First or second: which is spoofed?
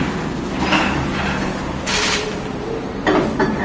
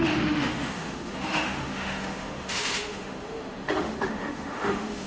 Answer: second